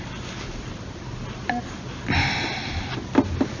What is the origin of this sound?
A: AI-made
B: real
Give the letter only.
B